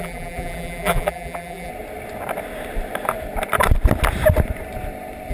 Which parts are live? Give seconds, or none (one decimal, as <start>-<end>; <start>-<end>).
1.7-5.3